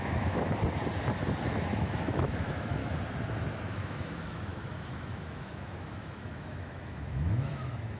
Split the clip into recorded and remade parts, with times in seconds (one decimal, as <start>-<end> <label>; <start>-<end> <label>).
0.0-0.5 remade; 0.5-1.6 recorded; 1.6-2.8 remade; 2.8-3.5 recorded; 3.5-8.0 remade